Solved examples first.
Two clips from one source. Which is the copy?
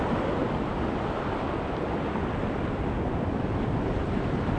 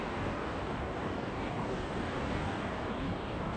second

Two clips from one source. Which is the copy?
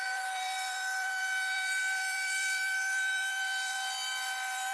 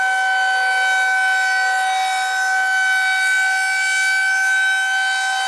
first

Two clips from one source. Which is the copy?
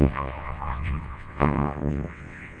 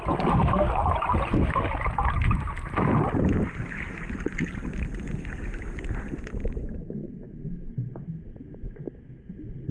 first